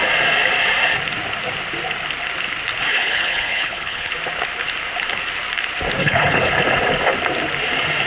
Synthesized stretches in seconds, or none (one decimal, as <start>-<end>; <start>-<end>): 2.9-4.1; 6.0-6.5